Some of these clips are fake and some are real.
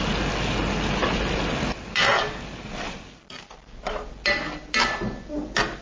real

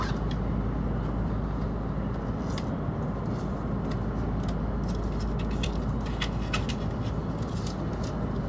real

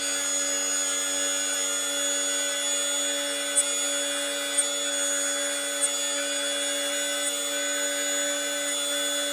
real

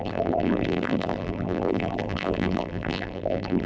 fake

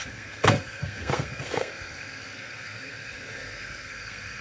fake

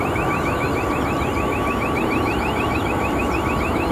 real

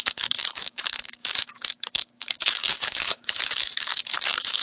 fake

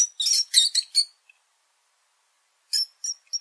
real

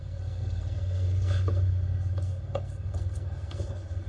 fake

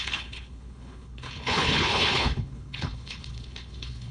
fake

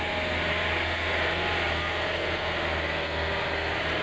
real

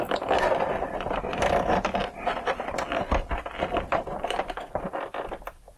real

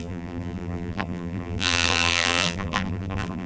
fake